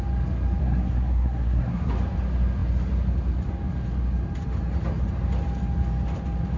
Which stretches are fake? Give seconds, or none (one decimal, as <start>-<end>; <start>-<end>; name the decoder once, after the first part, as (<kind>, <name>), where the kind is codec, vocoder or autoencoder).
0.6-1.9 (codec, SNAC)